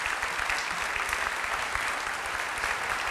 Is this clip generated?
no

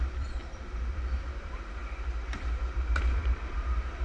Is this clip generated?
yes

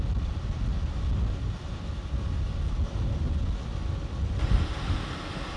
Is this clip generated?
no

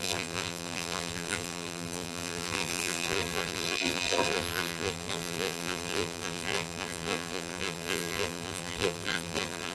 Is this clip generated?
yes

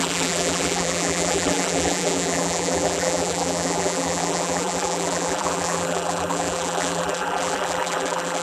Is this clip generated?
yes